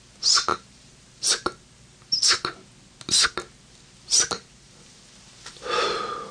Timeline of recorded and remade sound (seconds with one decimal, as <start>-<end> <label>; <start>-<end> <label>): 0.0-0.5 recorded; 0.5-2.0 remade; 2.0-4.1 recorded; 4.1-5.5 remade; 5.5-6.3 recorded